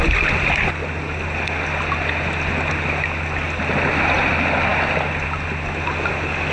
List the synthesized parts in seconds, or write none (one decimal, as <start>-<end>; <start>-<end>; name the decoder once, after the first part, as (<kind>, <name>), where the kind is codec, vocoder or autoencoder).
none